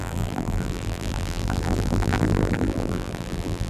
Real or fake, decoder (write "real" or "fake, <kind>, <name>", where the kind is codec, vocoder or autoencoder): fake, vocoder, BigVGAN v2